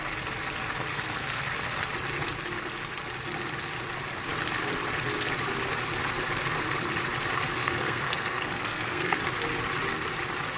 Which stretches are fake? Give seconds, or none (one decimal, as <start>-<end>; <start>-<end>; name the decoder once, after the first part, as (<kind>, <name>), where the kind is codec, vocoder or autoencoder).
0.9-1.4 (codec, SNAC); 7.6-9.2